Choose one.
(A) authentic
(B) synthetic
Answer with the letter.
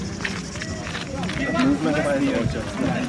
A